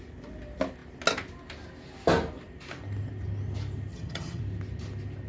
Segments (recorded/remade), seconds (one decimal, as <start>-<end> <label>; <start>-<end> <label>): 0.0-3.9 recorded; 3.9-4.4 remade; 4.4-5.3 recorded